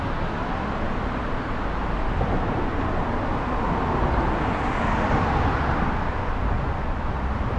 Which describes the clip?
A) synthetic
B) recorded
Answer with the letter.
B